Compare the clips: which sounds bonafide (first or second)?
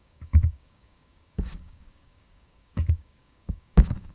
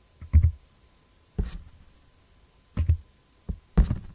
second